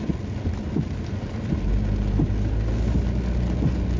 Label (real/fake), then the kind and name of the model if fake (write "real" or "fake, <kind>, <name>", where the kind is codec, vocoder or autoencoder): real